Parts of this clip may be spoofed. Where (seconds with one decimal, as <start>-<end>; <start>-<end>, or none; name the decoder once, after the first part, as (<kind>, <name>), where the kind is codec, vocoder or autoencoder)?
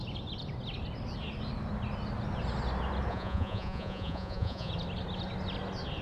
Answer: 3.1-4.7 (vocoder, Vocos)